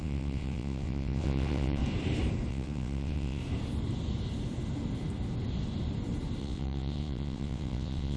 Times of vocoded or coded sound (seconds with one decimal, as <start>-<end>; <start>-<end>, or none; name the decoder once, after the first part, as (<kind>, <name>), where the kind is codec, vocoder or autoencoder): 0.0-1.8 (vocoder, WaveNeXt); 2.5-3.4; 6.4-8.2